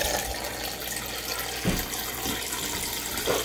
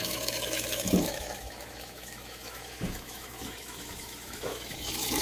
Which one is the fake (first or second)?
second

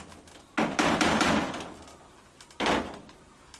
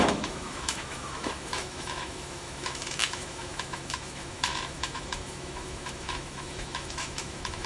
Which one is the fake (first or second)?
second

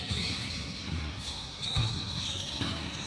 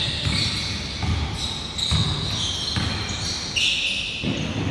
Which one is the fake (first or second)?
first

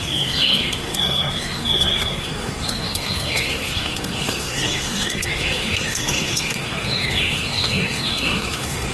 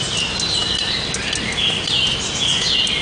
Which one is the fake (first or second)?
first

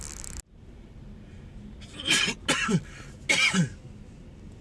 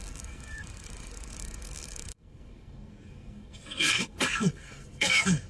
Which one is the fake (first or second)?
second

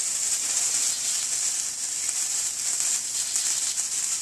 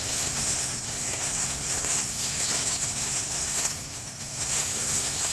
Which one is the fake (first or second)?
second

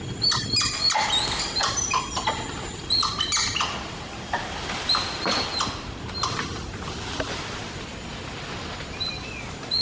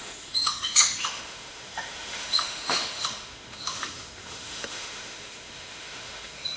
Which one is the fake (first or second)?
second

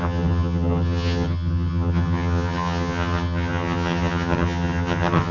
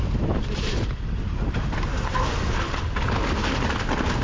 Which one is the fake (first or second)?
first